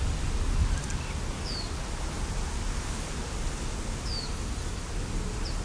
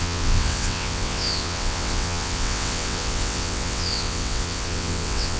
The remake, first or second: second